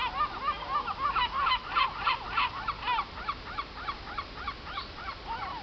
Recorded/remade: recorded